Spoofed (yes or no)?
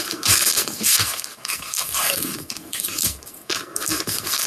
yes